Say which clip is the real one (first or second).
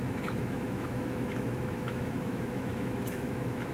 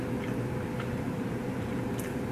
second